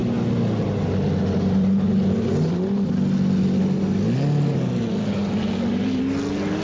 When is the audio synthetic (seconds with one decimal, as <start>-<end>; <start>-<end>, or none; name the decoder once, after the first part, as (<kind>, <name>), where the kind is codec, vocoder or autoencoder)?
5.2-6.0 (vocoder, BigVGAN v2)